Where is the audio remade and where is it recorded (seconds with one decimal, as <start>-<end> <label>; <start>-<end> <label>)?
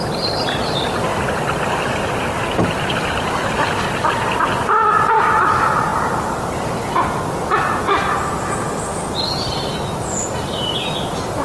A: 0.0-11.4 recorded